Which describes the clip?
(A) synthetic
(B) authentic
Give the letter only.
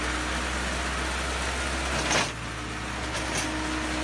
B